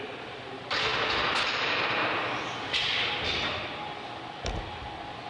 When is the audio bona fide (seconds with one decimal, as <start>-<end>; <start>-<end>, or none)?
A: 0.0-5.3